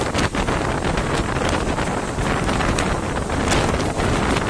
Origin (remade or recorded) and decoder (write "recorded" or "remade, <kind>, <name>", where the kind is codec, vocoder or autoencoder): recorded